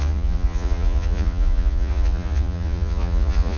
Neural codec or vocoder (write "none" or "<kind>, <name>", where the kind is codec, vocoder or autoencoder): vocoder, Vocos